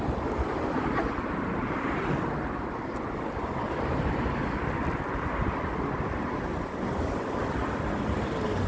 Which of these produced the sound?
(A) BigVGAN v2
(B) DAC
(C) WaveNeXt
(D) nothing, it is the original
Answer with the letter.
D